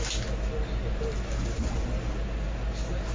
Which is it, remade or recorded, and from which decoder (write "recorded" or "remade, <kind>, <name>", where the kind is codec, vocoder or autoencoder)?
recorded